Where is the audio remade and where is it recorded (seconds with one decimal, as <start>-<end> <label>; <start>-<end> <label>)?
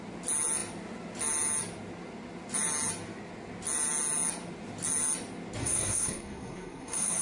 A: 0.0-5.6 recorded; 5.6-7.2 remade